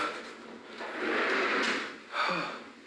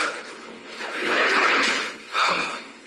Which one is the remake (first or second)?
second